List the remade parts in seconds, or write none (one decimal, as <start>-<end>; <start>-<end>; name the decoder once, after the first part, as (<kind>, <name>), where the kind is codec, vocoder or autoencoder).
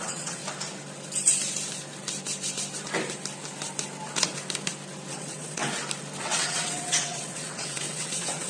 0.0-0.4 (vocoder, WaveNeXt); 5.1-5.6; 6.2-8.5